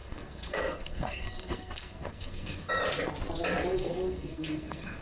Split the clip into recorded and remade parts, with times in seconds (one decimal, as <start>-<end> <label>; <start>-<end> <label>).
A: 0.0-2.7 remade; 2.7-3.7 recorded; 3.7-5.0 remade